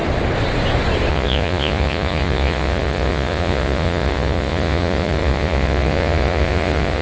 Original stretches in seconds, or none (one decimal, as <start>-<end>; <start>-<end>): 0.0-1.1

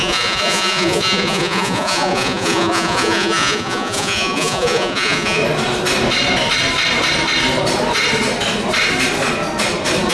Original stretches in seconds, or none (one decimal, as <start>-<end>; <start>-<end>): 5.4-10.1

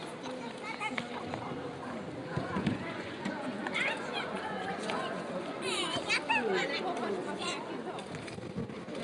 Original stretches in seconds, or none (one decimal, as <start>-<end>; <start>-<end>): 0.0-2.2; 6.1-7.2; 7.7-9.0

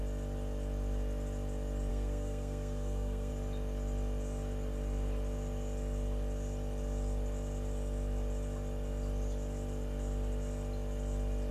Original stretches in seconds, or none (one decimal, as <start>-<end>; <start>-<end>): 0.0-1.9; 3.3-11.5

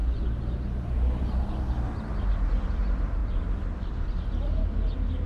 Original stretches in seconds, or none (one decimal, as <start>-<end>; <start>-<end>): 1.5-3.2; 3.9-5.3

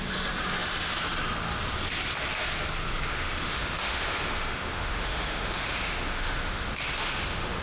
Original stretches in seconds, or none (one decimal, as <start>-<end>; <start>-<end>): 0.0-3.1